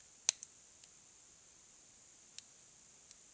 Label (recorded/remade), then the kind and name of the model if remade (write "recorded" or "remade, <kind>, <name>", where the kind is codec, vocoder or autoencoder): recorded